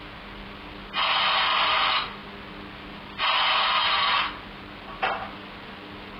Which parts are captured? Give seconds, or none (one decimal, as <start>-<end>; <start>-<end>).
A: 0.0-6.2

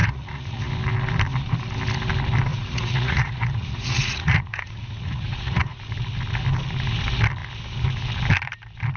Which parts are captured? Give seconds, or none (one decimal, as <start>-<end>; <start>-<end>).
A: 0.7-2.5; 5.8-9.0

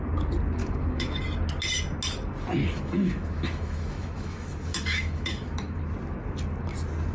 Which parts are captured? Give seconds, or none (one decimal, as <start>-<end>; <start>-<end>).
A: 0.0-0.6; 1.2-2.6; 5.8-7.1

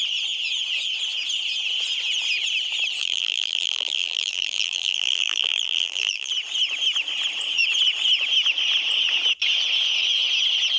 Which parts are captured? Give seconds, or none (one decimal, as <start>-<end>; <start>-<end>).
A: 0.0-3.0; 6.3-10.8

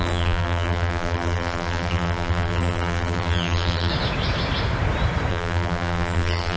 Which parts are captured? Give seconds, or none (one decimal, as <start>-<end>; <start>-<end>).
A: 3.9-5.3

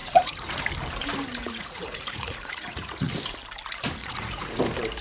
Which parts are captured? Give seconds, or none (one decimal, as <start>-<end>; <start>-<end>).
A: 0.6-1.4; 3.1-4.0; 4.6-5.0

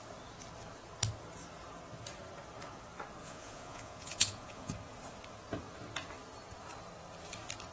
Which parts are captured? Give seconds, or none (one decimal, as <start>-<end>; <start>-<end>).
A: 0.0-3.2; 4.7-7.7